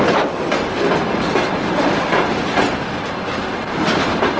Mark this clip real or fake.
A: real